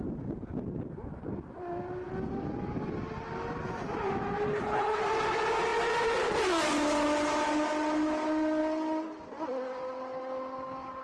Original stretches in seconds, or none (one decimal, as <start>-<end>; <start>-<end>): 0.0-4.5; 5.0-11.0